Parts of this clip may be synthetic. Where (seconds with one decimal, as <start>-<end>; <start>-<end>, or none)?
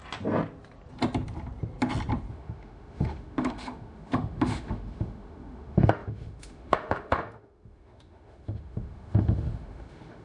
2.3-10.2